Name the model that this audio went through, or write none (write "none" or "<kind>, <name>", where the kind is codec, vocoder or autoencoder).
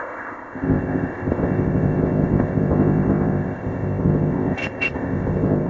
codec, ZipCodec